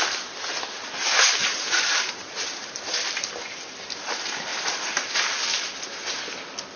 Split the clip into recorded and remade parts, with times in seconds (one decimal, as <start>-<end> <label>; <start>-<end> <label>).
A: 0.0-1.4 recorded; 1.4-2.8 remade; 2.8-4.5 recorded; 4.5-5.1 remade; 5.1-6.8 recorded